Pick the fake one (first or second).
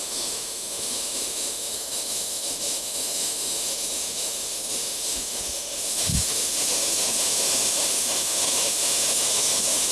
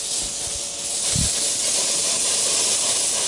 first